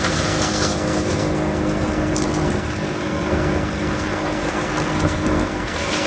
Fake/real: fake